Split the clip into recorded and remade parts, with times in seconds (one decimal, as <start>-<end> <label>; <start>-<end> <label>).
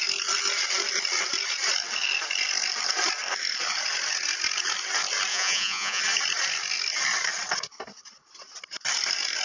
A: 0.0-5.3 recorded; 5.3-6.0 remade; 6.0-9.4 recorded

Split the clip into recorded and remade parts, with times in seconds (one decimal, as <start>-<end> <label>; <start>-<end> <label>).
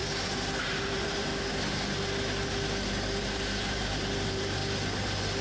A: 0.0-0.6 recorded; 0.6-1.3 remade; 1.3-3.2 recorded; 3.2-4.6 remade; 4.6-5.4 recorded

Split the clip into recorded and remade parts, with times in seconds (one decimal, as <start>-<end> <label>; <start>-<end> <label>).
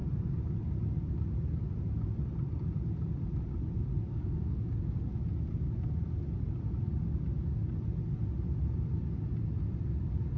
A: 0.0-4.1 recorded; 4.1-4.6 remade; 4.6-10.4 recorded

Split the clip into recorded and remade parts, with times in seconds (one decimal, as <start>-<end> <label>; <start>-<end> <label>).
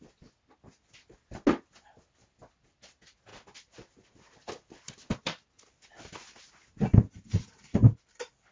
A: 0.0-8.5 recorded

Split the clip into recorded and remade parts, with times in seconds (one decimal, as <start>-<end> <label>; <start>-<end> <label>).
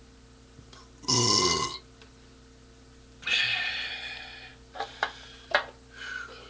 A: 0.0-6.5 recorded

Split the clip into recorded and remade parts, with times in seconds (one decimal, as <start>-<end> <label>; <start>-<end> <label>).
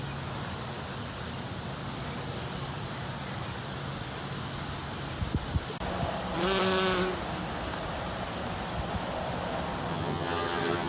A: 0.0-9.9 recorded; 9.9-10.9 remade